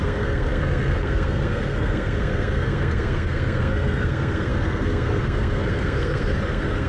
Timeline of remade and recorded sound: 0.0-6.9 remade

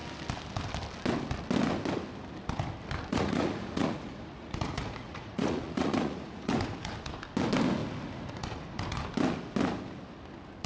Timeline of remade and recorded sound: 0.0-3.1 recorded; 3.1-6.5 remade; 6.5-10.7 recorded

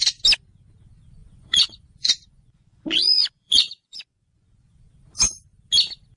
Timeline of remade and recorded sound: 0.0-1.2 recorded; 1.2-4.9 remade; 4.9-6.2 recorded

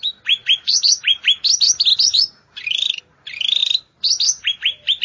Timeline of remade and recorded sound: 0.0-0.4 recorded; 0.4-1.2 remade; 1.2-1.9 recorded; 1.9-3.0 remade; 3.0-5.0 recorded

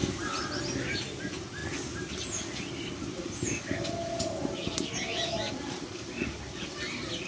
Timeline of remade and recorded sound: 0.0-7.3 recorded

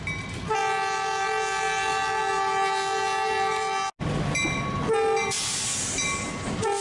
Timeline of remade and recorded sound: 0.0-6.8 recorded